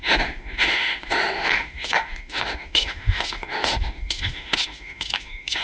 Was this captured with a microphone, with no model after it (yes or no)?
no